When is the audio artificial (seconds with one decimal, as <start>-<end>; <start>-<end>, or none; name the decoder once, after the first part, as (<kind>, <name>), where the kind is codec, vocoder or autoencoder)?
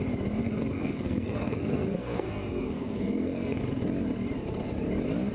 0.4-3.6 (codec, SNAC)